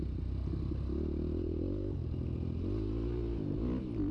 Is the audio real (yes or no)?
yes